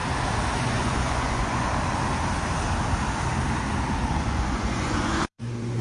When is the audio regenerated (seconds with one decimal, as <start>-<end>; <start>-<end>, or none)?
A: 0.6-1.7; 4.1-5.8